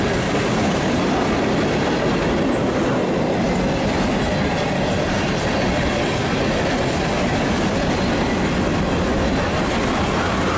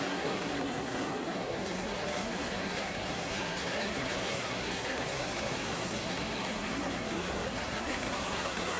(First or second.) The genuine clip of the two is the first